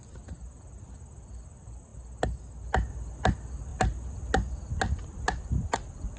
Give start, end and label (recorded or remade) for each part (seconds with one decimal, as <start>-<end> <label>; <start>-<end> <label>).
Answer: 0.0-6.2 recorded